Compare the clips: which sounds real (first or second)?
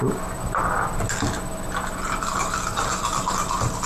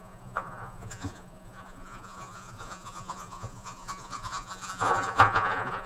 first